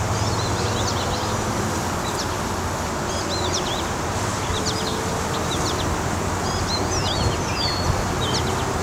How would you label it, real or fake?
real